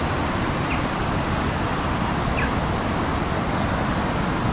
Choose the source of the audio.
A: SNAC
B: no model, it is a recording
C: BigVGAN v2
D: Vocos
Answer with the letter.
B